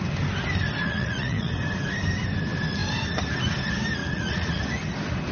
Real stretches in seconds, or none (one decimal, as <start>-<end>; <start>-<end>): 0.0-0.8; 1.5-4.0; 4.6-5.3